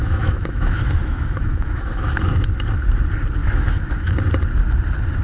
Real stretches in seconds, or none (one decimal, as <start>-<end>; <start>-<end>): 2.1-3.4; 4.1-5.2